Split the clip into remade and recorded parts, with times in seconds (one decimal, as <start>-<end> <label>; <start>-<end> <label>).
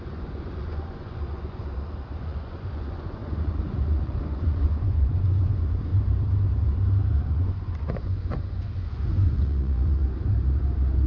0.0-1.7 remade; 1.7-2.2 recorded; 2.2-5.9 remade; 5.9-7.3 recorded; 7.3-10.0 remade; 10.0-11.1 recorded